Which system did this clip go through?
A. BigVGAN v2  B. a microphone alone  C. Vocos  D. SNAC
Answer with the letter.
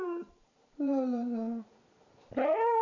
A